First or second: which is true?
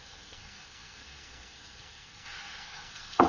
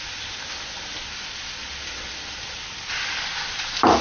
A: second